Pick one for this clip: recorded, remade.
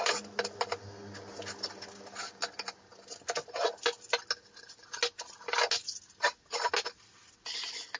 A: recorded